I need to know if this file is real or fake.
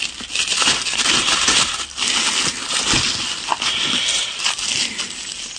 real